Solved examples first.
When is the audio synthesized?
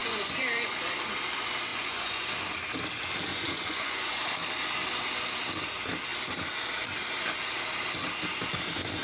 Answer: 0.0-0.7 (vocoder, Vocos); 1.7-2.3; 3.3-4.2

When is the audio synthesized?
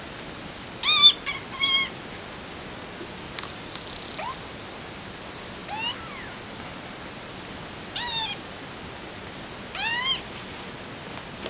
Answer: none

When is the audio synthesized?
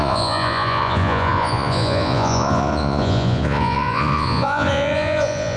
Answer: 0.0-5.6 (vocoder, Vocos)